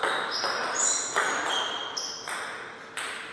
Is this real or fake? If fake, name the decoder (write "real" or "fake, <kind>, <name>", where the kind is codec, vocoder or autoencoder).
real